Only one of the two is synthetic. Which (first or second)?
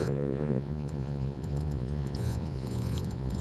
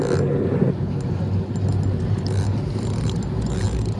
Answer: first